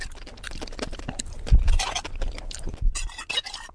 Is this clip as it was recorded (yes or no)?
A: yes